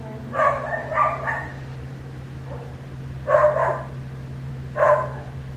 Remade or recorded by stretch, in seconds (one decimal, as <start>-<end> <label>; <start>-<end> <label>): 0.0-0.8 remade; 0.8-1.8 recorded; 1.8-2.7 remade; 2.7-4.5 recorded; 4.5-5.6 remade